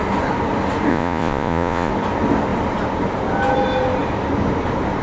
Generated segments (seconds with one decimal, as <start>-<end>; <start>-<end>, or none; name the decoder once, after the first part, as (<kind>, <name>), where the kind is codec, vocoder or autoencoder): 0.9-1.9 (vocoder, Vocos)